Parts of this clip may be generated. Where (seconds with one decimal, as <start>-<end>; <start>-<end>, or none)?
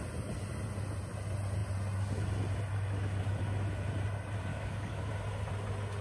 4.5-5.1